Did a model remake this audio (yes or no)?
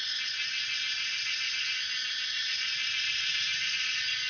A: yes